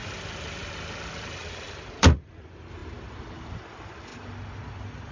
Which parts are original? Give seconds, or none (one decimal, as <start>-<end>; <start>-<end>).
0.7-1.4; 2.3-5.1